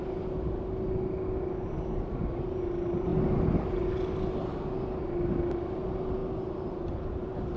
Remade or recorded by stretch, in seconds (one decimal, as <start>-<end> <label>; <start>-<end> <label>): 0.0-7.6 recorded